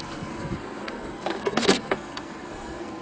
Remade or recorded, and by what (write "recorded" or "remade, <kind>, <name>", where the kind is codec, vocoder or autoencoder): remade, codec, SNAC